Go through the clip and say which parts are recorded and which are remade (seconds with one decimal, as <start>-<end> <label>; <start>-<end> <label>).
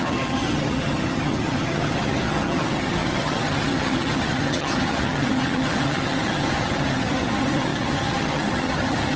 0.0-9.2 remade